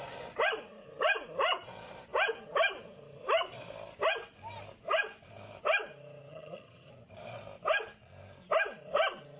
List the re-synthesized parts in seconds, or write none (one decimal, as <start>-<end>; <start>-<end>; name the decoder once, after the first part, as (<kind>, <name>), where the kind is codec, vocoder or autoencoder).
6.3-6.9 (vocoder, HiFi-GAN)